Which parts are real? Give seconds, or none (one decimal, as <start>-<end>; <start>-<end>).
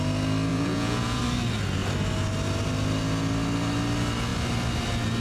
0.0-0.5; 1.2-5.2